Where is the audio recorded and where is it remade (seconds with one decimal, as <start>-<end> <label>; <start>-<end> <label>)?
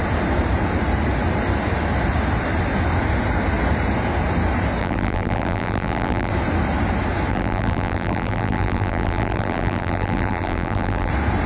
0.0-4.8 recorded; 4.8-6.3 remade; 6.3-7.3 recorded; 7.3-11.1 remade; 11.1-11.5 recorded